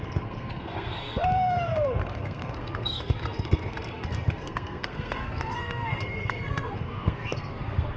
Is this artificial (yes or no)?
yes